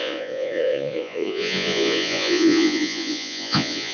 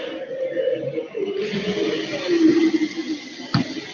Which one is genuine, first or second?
second